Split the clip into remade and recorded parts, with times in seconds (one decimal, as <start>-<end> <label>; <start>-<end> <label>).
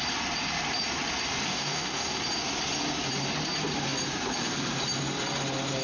0.0-1.5 recorded; 1.5-2.2 remade; 2.2-5.8 recorded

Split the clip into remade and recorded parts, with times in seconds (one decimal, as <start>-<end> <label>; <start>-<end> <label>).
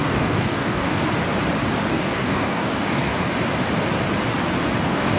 0.0-1.0 remade; 1.0-1.9 recorded; 1.9-3.1 remade; 3.1-4.8 recorded; 4.8-5.2 remade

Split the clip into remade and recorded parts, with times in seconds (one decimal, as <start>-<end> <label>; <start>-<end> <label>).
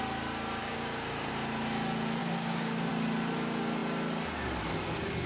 0.0-0.6 recorded; 0.6-1.3 remade; 1.3-2.2 recorded; 2.2-2.9 remade; 2.9-5.3 recorded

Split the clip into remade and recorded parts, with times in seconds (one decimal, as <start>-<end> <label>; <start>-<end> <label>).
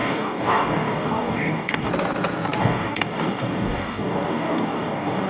0.0-1.9 remade; 1.9-2.6 recorded; 2.6-5.3 remade